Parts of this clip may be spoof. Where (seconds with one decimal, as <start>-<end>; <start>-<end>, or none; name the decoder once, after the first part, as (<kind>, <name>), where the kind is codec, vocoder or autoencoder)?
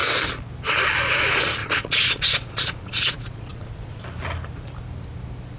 1.6-4.0 (vocoder, Vocos)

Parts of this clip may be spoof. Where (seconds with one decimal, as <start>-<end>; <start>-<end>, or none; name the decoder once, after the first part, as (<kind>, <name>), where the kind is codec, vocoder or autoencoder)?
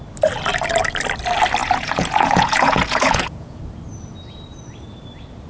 1.6-3.6 (vocoder, Vocos)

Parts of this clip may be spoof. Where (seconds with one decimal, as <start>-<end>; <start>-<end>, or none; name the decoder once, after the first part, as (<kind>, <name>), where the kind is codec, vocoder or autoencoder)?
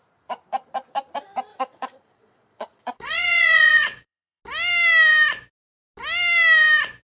1.5-4.4 (vocoder, Vocos)